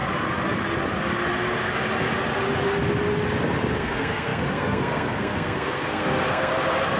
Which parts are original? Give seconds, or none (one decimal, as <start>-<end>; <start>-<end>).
0.0-3.8; 6.5-7.0